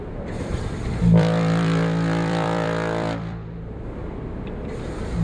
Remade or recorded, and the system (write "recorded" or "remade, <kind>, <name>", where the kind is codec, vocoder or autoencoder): remade, vocoder, BigVGAN v2